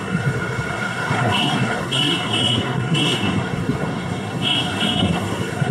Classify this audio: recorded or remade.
remade